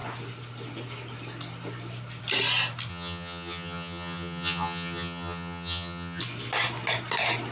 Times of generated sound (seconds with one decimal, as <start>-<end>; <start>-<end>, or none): 2.9-6.2